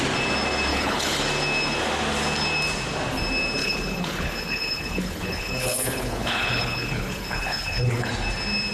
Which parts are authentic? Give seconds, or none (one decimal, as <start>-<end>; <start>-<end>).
0.0-0.7; 1.2-3.6; 8.1-8.7